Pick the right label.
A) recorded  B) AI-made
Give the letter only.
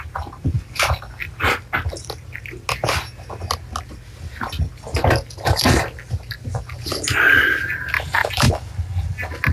A